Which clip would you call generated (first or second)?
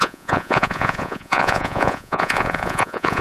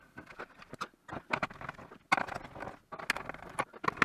first